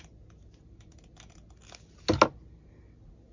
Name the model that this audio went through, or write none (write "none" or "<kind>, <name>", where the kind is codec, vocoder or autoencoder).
none